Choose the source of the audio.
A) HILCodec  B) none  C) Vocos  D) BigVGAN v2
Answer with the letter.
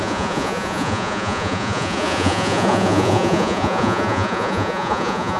C